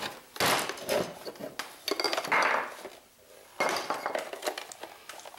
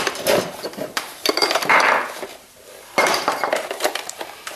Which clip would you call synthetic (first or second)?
second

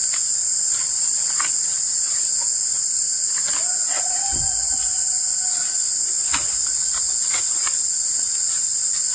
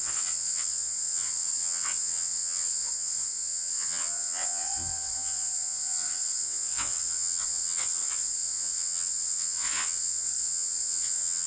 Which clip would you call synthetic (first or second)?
second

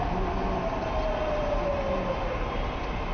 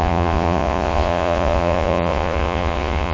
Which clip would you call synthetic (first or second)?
second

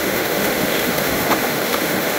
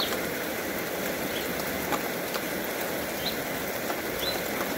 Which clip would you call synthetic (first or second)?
first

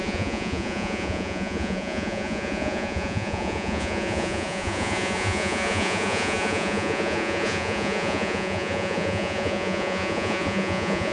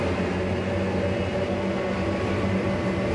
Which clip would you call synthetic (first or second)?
first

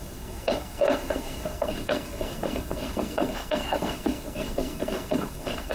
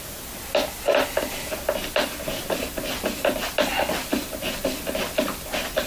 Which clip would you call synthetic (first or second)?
first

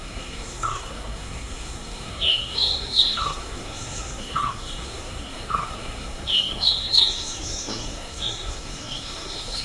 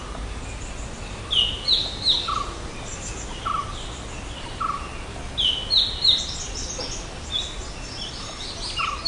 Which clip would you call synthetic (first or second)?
first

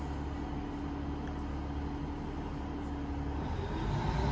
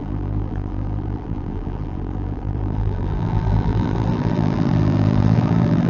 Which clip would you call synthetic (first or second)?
second